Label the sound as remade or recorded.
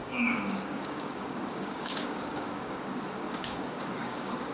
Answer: remade